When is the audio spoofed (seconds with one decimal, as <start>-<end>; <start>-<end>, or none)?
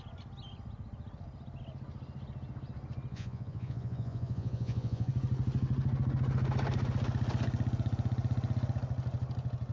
3.1-5.1